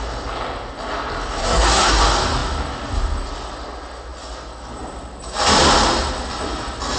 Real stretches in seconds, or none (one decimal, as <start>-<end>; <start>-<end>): 0.0-1.4; 2.0-7.0